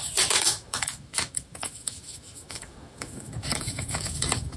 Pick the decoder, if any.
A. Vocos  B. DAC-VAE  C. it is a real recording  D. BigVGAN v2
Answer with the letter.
B